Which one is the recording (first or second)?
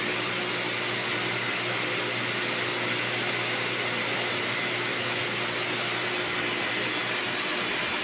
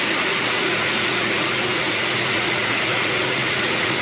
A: first